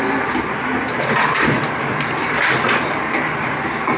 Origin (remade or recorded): recorded